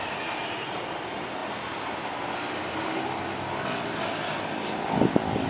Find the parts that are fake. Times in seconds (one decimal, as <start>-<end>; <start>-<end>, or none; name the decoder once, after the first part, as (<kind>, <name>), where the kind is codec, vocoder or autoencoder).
none